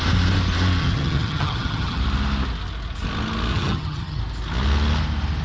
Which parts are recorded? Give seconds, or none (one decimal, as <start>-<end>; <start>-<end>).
0.0-0.8; 2.0-3.5; 4.2-5.4